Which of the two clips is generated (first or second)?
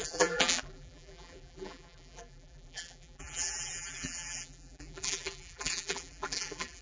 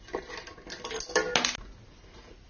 first